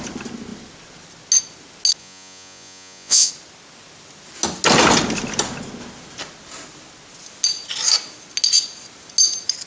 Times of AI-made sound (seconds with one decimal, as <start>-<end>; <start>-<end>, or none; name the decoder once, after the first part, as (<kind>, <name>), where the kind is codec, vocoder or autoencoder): 2.0-3.3 (vocoder, Vocos)

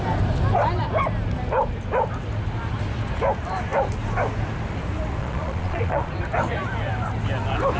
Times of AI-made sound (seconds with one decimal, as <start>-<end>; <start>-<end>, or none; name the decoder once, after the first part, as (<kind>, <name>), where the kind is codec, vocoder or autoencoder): 5.2-6.1 (vocoder, Vocos)

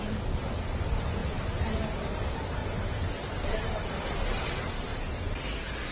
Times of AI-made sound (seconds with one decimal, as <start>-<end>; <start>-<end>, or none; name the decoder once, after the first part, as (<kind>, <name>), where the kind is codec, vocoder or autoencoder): 1.2-1.7 (vocoder, BigVGAN v2); 2.6-3.9

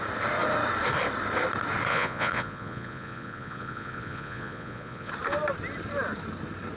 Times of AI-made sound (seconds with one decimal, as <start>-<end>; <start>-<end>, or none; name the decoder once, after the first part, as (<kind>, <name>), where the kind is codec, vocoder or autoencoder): 1.9-5.1 (vocoder, Vocos)